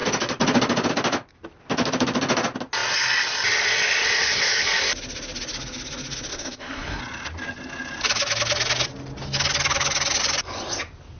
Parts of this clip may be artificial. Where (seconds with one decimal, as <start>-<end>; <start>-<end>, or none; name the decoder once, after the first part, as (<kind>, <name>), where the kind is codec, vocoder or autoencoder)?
6.3-7.0 (codec, SNAC)